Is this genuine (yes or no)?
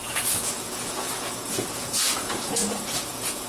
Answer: no